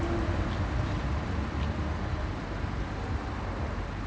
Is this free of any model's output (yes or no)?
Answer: yes